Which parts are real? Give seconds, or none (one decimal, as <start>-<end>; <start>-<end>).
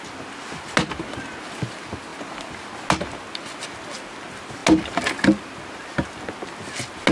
0.0-7.1